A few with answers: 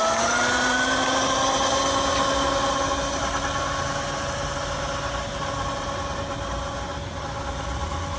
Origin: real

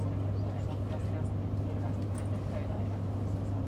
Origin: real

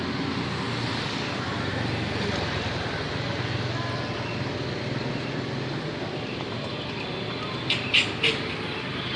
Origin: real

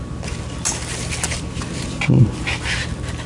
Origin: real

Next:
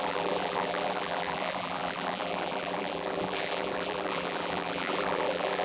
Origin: fake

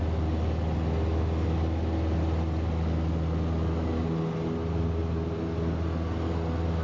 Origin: real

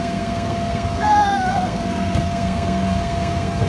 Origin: fake